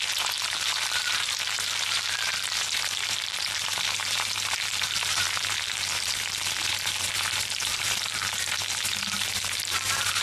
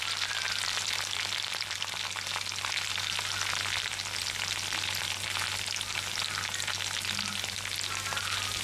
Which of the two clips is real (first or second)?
second